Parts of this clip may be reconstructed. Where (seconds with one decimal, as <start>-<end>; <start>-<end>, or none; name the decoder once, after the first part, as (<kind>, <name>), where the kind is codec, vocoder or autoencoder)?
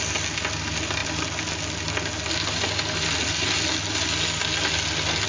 none